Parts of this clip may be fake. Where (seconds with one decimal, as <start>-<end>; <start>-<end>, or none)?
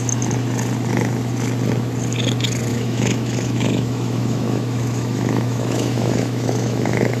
2.7-7.2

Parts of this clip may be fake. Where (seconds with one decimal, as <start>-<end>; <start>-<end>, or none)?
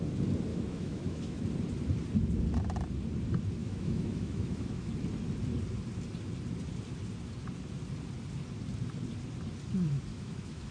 0.5-1.4; 3.6-4.9; 10.1-10.7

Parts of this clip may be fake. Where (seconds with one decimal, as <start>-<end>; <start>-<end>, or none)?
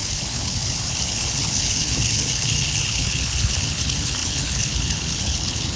0.0-5.8